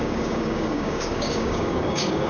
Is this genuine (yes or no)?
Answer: no